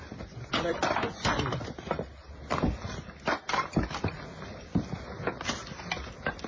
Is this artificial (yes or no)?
no